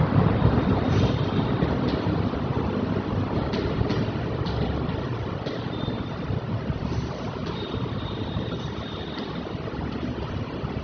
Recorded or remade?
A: remade